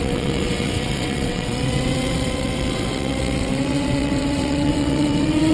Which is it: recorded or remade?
remade